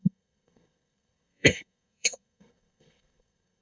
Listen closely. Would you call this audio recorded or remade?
remade